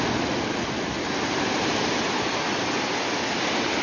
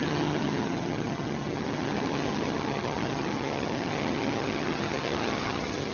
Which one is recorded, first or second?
first